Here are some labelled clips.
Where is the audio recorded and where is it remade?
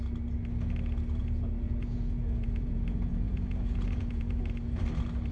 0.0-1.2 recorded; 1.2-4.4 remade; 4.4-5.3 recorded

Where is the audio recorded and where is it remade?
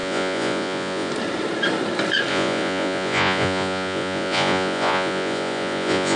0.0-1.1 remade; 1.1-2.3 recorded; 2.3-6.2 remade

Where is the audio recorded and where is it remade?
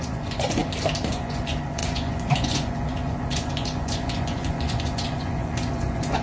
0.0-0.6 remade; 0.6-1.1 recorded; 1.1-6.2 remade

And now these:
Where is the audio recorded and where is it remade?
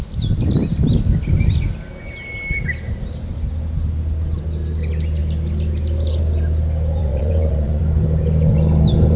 0.0-7.0 recorded; 7.0-7.8 remade; 7.8-9.2 recorded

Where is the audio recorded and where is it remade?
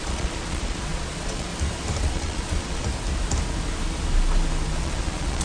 0.0-1.5 remade; 1.5-2.0 recorded; 2.0-2.8 remade; 2.8-4.8 recorded; 4.8-5.4 remade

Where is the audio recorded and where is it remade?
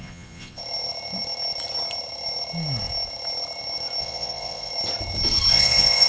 0.0-0.6 remade; 0.6-4.0 recorded; 4.0-4.7 remade; 4.7-5.5 recorded; 5.5-6.1 remade